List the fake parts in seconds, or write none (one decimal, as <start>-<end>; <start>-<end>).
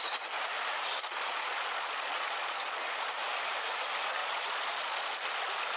0.9-3.2; 4.2-5.2